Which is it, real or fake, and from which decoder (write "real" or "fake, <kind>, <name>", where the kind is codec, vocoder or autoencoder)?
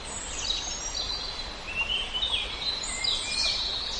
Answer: real